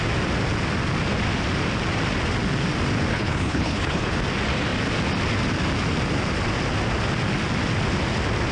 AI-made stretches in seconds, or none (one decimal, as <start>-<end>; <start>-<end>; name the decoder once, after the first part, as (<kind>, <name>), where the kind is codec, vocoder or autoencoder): 3.1-4.1 (codec, HILCodec)